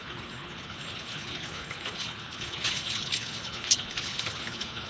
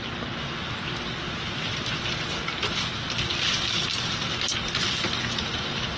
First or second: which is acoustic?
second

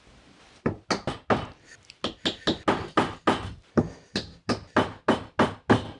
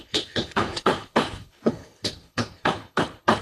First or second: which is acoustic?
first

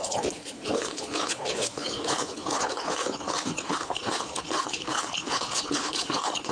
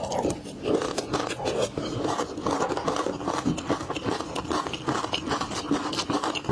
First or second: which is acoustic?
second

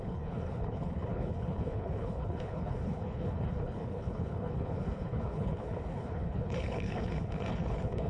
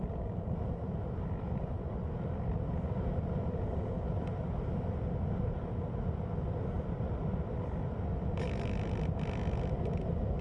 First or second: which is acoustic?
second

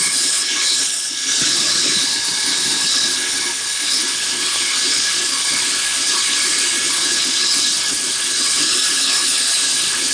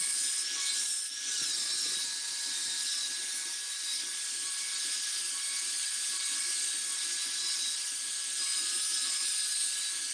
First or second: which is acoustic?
second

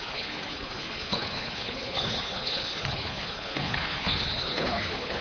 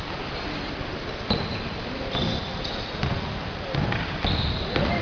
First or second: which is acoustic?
second